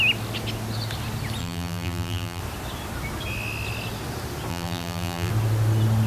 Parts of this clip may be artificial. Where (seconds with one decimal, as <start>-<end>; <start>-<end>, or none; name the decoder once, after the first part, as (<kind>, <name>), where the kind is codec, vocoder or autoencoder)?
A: 1.4-2.4 (vocoder, BigVGAN v2); 4.5-5.3